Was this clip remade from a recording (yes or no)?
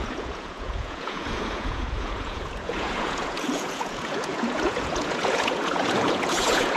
yes